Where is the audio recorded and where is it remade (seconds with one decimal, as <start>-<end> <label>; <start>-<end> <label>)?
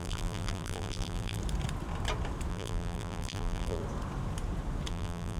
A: 0.0-1.4 remade; 1.4-2.5 recorded; 2.5-3.8 remade; 3.8-4.9 recorded; 4.9-5.4 remade